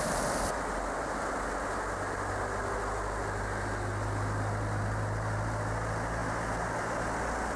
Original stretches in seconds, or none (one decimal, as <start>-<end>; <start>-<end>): 0.0-7.6